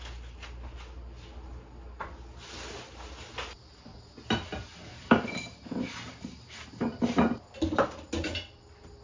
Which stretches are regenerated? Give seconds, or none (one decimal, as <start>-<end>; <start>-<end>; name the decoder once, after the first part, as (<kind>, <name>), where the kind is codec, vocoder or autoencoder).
4.9-7.5 (vocoder, BigVGAN v2)